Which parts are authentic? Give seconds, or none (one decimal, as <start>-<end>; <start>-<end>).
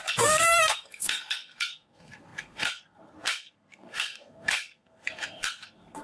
none